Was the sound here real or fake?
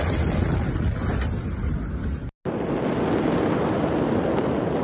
real